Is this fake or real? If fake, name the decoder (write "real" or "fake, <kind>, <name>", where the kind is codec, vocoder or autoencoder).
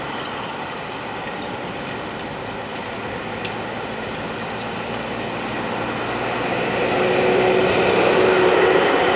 real